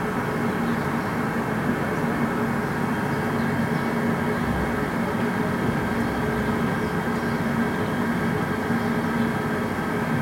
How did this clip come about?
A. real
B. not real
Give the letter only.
A